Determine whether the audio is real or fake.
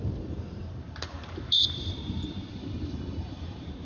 fake